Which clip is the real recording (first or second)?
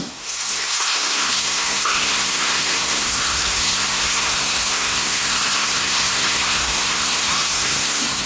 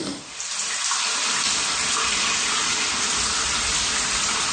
second